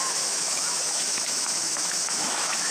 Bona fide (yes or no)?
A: no